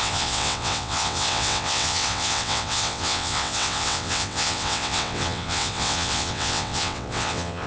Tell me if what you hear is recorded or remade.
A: remade